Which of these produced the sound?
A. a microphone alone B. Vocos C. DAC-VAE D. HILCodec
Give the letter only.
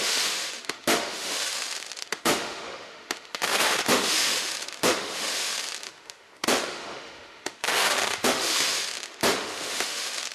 C